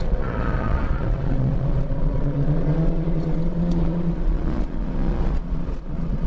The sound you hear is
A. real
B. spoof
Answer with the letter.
B